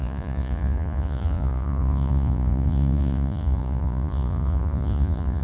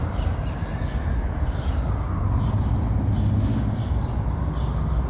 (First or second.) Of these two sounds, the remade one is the first